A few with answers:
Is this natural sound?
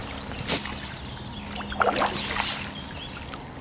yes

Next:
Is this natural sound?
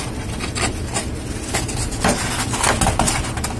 yes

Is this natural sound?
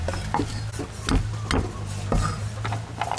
yes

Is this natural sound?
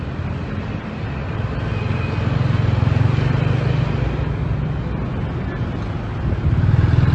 yes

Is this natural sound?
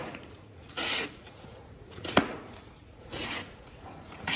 no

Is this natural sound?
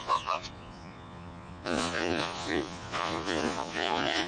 no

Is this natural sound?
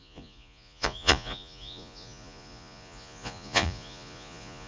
no